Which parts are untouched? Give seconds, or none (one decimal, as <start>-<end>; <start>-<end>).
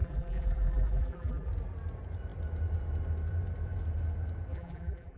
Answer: 1.5-4.5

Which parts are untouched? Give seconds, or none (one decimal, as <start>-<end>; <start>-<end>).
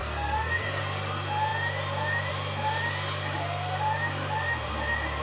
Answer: 0.8-5.2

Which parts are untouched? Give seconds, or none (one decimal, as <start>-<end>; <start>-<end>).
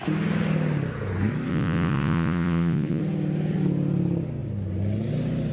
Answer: 0.0-1.5; 3.0-5.5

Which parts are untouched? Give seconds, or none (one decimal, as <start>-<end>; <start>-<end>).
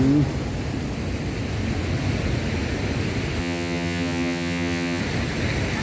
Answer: 0.0-3.4; 5.0-5.8